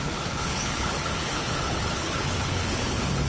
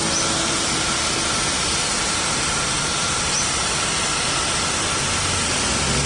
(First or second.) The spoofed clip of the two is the first